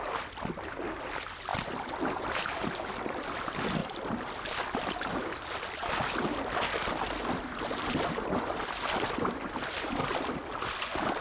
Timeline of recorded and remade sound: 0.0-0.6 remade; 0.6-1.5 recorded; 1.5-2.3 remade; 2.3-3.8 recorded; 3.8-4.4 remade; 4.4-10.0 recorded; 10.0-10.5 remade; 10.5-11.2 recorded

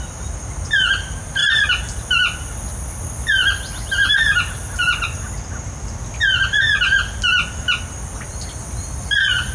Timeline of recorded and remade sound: 0.0-9.5 recorded

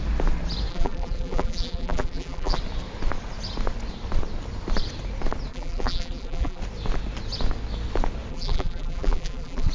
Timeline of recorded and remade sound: 0.0-0.7 recorded; 0.7-2.6 remade; 2.6-5.5 recorded; 5.5-6.6 remade; 6.6-8.3 recorded; 8.3-9.7 remade

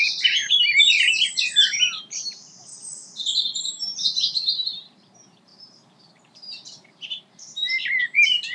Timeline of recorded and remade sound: 0.0-3.0 remade; 3.0-3.6 recorded; 3.6-8.5 remade

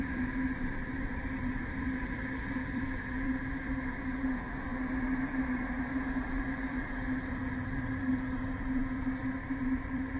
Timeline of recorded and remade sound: 0.0-10.2 remade

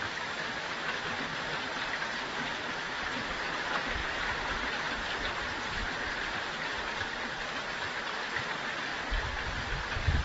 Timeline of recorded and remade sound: 0.0-10.2 recorded

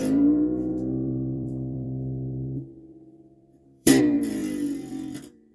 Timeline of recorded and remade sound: 0.0-4.4 remade; 4.4-4.9 recorded; 4.9-5.5 remade

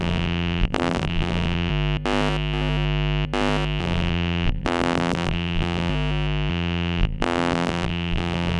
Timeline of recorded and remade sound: 0.0-1.7 remade; 1.7-3.8 recorded; 3.8-5.9 remade; 5.9-6.5 recorded; 6.5-8.6 remade